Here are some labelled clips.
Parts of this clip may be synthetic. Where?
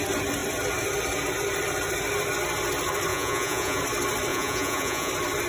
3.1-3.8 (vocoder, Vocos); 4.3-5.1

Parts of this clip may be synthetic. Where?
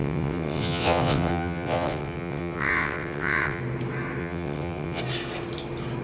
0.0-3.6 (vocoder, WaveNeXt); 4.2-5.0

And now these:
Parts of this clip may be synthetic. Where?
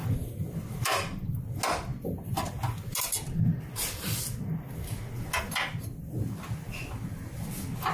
none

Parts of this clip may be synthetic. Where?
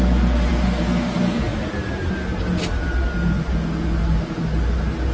none